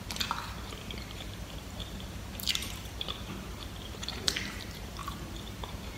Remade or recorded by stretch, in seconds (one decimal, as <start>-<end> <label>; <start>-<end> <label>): 0.0-6.0 remade